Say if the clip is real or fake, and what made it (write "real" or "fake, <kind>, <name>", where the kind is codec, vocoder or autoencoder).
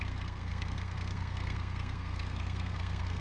fake, codec, SNAC